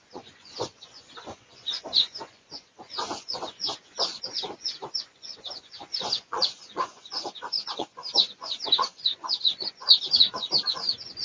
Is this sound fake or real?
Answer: fake